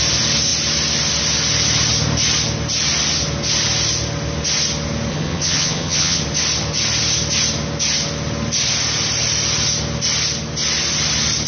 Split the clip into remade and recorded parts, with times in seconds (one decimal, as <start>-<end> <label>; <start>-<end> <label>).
0.0-5.1 recorded; 5.1-6.2 remade; 6.2-11.5 recorded